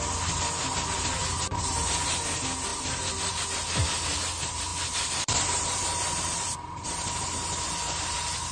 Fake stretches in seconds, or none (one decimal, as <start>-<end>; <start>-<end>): 2.7-3.4; 4.7-7.7